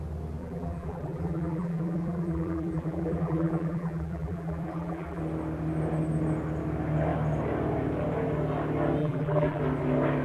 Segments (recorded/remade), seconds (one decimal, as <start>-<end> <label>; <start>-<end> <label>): 0.0-0.4 recorded; 0.4-5.2 remade; 5.2-9.0 recorded; 9.0-9.6 remade; 9.6-10.2 recorded